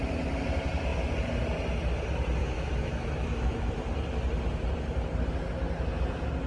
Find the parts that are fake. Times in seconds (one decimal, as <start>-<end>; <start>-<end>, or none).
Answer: 2.4-3.7